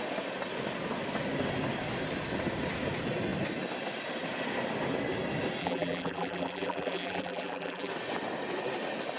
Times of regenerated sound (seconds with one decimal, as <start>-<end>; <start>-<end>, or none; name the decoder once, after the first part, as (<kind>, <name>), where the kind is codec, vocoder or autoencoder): 5.6-7.9 (vocoder, BigVGAN v2)

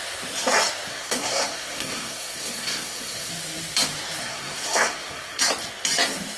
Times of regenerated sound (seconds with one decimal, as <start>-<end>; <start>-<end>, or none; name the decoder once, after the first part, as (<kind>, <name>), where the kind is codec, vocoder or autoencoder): 0.9-3.3 (codec, SNAC); 4.2-5.4

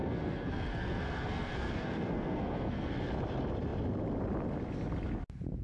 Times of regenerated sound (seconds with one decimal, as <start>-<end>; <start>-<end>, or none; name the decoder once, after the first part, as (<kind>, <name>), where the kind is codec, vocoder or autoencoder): 0.0-2.9 (codec, SNAC)

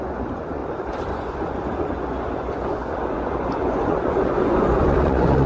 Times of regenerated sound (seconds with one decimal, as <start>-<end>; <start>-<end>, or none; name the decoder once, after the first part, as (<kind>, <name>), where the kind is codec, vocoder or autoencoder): 0.0-0.6 (vocoder, Vocos); 1.1-5.5

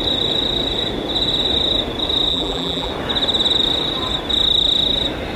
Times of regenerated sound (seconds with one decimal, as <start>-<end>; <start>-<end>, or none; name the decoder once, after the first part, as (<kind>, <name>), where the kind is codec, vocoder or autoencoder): 2.3-2.9 (vocoder, BigVGAN v2)

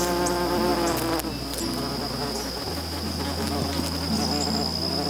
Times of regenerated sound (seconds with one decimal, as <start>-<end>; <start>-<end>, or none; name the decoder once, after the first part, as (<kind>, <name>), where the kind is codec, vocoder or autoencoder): none

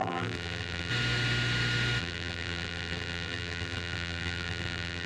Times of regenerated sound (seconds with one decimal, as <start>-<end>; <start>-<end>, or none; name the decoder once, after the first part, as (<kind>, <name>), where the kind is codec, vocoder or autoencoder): 0.0-0.9 (vocoder, BigVGAN v2); 2.0-5.1

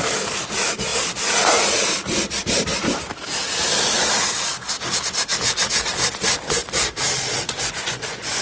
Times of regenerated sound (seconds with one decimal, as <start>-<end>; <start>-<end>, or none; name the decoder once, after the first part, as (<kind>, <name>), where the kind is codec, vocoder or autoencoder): 7.4-8.4 (vocoder, Vocos)